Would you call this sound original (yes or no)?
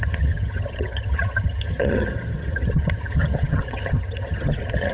no